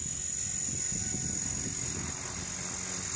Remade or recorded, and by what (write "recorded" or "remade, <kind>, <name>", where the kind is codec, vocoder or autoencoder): recorded